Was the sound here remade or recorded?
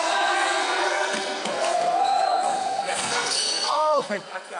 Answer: remade